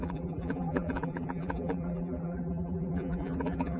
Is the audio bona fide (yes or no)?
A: no